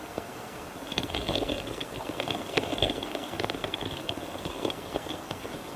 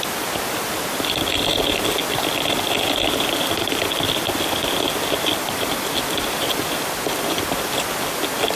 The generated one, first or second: first